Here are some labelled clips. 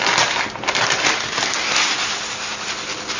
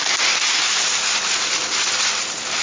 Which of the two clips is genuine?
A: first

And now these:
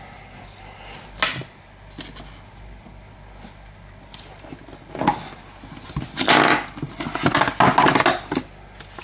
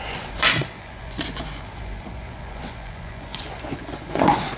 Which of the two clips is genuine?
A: first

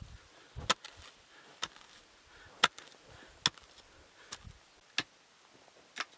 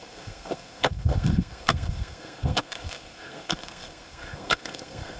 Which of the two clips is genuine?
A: first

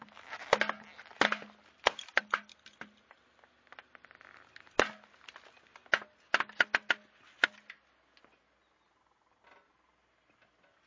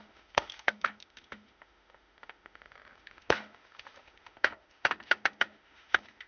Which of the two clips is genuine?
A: first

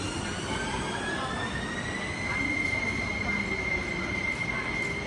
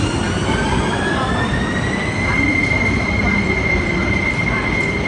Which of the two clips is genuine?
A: first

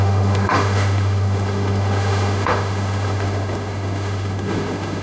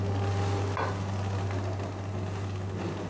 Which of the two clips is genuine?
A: second